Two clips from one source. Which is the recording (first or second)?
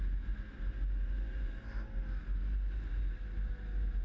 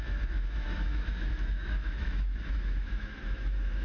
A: first